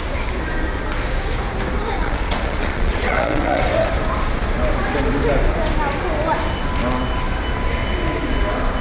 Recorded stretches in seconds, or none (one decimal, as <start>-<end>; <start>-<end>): 0.0-2.0; 3.6-8.8